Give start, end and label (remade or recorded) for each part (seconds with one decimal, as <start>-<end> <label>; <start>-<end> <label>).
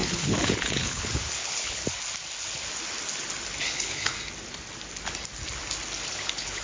0.0-1.8 remade; 1.8-3.6 recorded; 3.6-4.1 remade; 4.1-6.1 recorded; 6.1-6.6 remade